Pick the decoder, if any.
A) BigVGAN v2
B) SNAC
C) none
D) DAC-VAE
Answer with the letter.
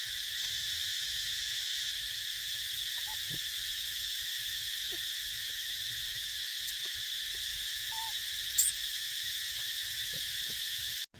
D